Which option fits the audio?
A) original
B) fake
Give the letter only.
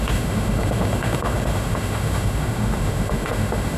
B